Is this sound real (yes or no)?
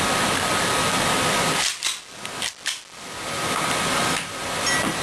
yes